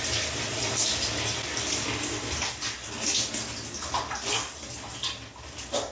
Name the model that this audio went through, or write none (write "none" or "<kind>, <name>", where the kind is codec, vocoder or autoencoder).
none